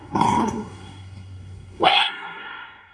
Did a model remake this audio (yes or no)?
yes